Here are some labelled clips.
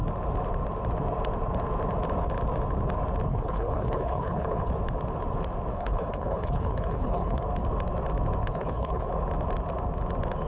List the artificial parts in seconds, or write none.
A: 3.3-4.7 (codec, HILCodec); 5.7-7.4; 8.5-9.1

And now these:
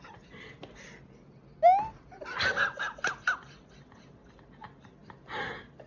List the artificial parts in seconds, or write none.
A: none

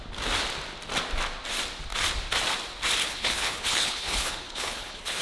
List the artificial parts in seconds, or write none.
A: 3.0-5.2 (codec, HILCodec)